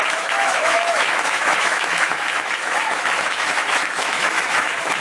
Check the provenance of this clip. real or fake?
fake